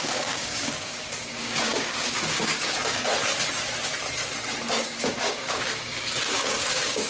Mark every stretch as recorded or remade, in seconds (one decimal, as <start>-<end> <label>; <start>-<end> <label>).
0.0-3.1 remade; 3.1-4.7 recorded; 4.7-7.1 remade